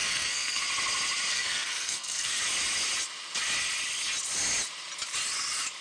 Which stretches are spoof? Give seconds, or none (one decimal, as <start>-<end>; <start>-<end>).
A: 0.0-0.6; 1.3-2.4